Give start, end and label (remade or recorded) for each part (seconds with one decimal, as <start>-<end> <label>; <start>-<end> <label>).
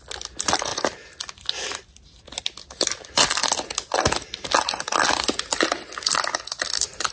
0.0-7.1 recorded